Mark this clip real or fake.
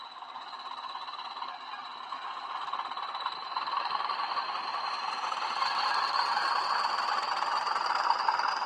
real